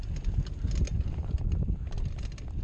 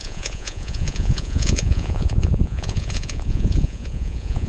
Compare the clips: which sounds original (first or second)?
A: first